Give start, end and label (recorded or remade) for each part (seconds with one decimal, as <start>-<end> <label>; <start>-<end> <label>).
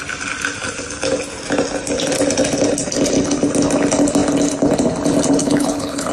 0.0-5.4 recorded; 5.4-6.1 remade